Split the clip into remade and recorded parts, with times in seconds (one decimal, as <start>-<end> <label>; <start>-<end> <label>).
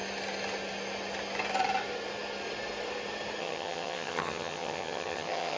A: 0.0-3.4 recorded; 3.4-5.6 remade